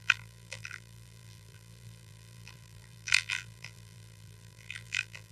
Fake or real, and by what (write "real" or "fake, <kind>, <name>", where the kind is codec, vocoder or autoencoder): fake, vocoder, BigVGAN v2